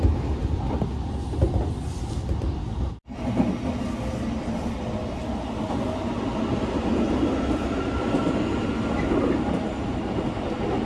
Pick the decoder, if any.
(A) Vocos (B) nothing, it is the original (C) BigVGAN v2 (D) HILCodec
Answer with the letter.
B